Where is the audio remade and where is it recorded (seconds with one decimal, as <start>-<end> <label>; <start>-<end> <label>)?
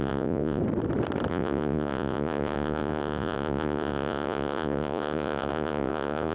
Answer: 0.0-0.6 remade; 0.6-1.3 recorded; 1.3-6.3 remade